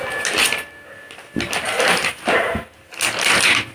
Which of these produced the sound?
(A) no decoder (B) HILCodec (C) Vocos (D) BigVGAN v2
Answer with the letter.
A